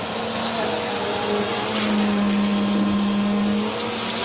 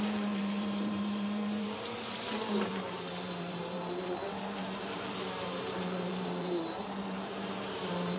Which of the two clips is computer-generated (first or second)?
second